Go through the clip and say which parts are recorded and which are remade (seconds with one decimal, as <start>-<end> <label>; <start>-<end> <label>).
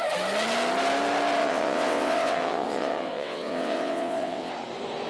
0.0-1.4 recorded; 1.4-4.5 remade; 4.5-5.1 recorded